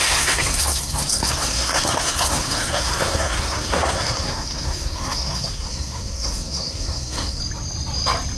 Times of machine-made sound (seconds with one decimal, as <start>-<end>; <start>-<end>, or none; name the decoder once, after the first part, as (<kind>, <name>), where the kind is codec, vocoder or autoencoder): 0.0-7.4 (codec, SNAC)